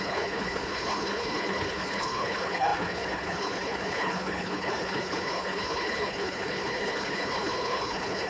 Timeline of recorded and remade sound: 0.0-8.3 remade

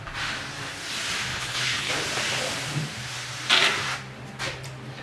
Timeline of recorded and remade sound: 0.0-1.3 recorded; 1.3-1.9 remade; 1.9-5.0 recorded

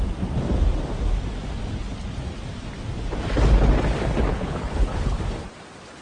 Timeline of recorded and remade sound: 0.0-4.3 recorded; 4.3-5.2 remade; 5.2-6.0 recorded

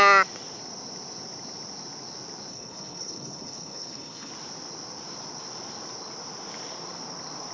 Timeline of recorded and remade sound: 0.0-2.5 recorded; 2.5-4.3 remade; 4.3-7.5 recorded

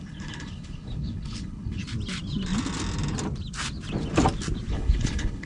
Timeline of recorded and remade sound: 0.0-1.8 remade; 1.8-4.7 recorded; 4.7-5.5 remade

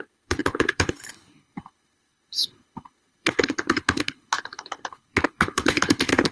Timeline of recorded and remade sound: 0.0-6.3 remade

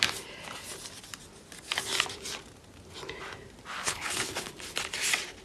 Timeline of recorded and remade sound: 0.0-3.8 recorded; 3.8-4.5 remade; 4.5-5.4 recorded